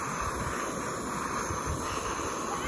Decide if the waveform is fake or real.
real